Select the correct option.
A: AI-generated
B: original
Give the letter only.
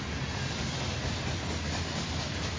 B